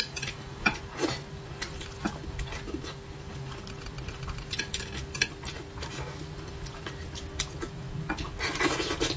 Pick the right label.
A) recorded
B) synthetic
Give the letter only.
A